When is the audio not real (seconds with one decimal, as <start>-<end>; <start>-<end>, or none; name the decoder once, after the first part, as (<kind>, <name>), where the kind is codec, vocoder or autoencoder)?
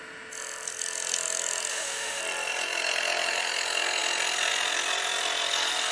1.7-2.2 (autoencoder, DAC-VAE)